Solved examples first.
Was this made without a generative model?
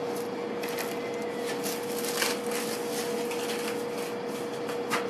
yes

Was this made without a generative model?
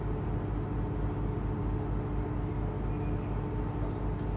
yes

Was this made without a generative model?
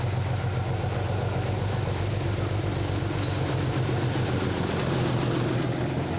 yes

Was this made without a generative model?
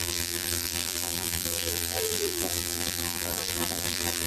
no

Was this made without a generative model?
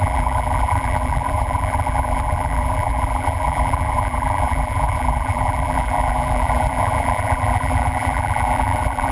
no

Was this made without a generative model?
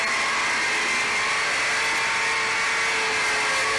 yes